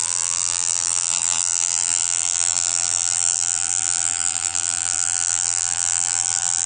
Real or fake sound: fake